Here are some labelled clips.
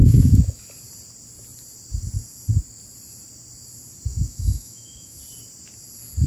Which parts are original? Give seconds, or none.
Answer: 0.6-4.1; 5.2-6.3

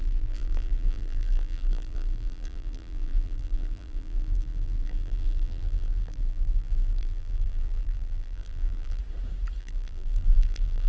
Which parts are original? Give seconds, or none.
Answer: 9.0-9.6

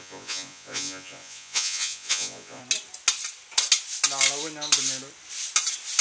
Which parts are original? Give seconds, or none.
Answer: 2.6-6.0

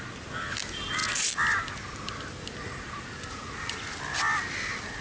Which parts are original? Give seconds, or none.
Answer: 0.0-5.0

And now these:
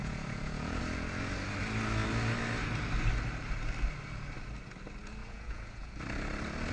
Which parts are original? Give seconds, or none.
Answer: 0.8-5.2; 5.9-6.7